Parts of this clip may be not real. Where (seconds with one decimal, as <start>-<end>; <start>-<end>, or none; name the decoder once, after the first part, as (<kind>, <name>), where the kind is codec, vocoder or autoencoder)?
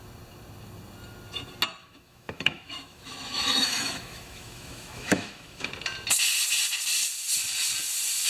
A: 1.8-5.7 (autoencoder, DAC-VAE)